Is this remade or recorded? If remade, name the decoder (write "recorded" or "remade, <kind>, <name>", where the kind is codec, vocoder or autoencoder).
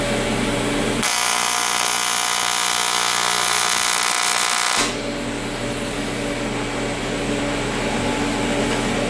recorded